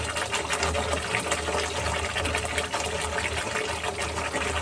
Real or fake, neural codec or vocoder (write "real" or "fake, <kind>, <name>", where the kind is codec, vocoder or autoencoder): real